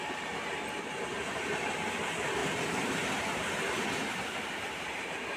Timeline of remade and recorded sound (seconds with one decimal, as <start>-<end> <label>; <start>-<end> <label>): 0.0-2.4 recorded; 2.4-5.4 remade